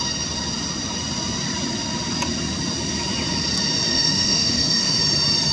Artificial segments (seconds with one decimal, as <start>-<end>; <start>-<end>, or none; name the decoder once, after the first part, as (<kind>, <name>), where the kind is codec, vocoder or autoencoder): 3.9-5.0 (autoencoder, DAC-VAE)